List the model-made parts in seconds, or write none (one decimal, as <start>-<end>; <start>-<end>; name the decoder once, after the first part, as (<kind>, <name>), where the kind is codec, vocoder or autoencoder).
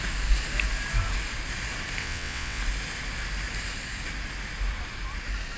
2.0-2.6 (vocoder, WaveNeXt)